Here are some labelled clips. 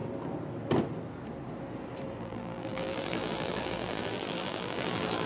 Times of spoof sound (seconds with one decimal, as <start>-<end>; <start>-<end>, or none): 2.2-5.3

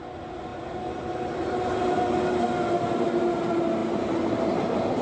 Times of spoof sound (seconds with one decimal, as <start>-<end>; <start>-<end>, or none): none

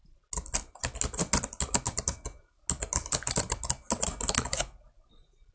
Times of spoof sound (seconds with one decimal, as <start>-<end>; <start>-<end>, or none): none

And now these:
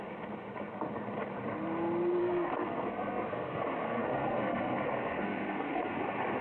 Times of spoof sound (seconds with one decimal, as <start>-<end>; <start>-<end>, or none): 2.2-6.0